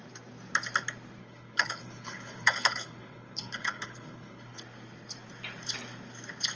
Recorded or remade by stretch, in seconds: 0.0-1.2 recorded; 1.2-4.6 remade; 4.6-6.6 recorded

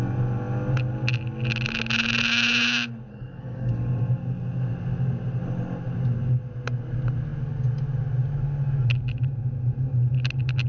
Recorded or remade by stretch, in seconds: 0.0-3.1 recorded; 3.1-3.7 remade; 3.7-10.7 recorded

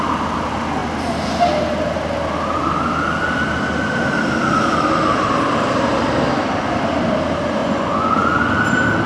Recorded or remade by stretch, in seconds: 0.0-7.6 recorded; 7.6-8.5 remade; 8.5-9.1 recorded

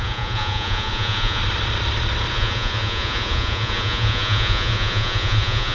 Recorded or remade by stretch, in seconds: 0.0-1.4 remade; 1.4-2.3 recorded; 2.3-5.7 remade

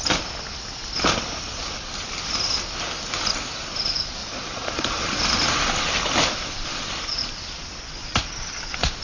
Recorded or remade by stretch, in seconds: 0.0-4.2 recorded; 4.2-5.0 remade; 5.0-6.7 recorded; 6.7-7.2 remade; 7.2-9.0 recorded

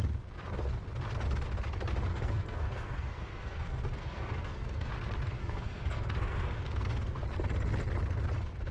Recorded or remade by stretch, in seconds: 0.0-2.1 recorded; 2.1-4.9 remade; 4.9-5.4 recorded; 5.4-7.2 remade; 7.2-8.7 recorded

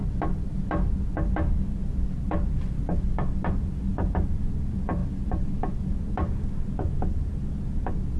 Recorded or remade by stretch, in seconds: 0.0-8.2 recorded